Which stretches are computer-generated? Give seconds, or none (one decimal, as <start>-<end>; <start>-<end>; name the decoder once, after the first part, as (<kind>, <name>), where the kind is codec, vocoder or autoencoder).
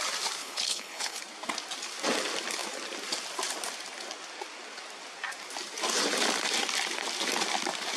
0.4-1.2 (codec, HILCodec)